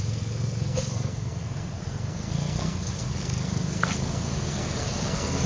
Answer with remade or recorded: remade